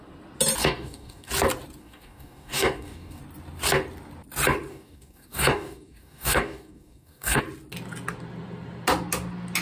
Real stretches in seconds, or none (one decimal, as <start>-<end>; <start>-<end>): 0.0-0.6; 1.3-1.8; 3.2-4.7; 7.4-9.6